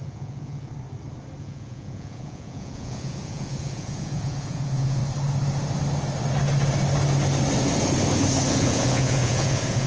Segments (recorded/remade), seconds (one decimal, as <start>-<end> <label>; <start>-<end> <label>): 0.0-0.7 remade; 0.7-1.4 recorded; 1.4-5.0 remade; 5.0-8.5 recorded; 8.5-9.9 remade